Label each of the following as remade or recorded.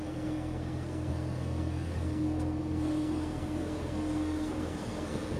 remade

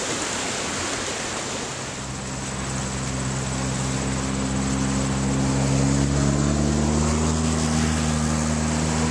recorded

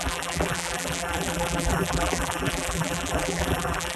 remade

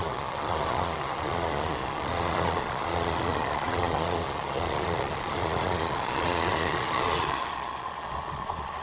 remade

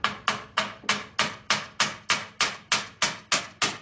recorded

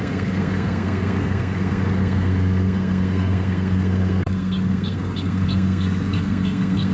remade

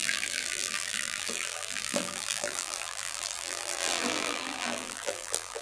remade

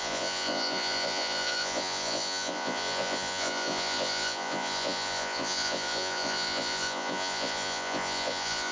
remade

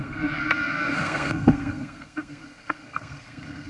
remade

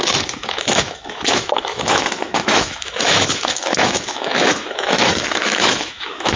remade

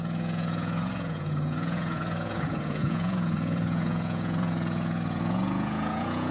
remade